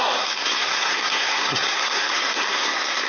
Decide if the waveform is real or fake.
fake